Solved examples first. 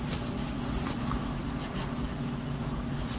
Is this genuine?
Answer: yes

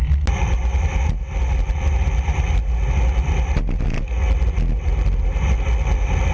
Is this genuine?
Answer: yes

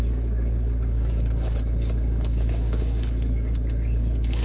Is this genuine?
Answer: no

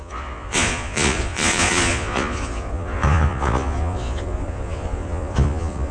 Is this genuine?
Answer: no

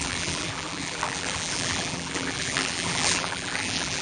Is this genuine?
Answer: no